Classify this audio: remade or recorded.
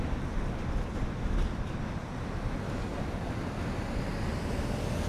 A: recorded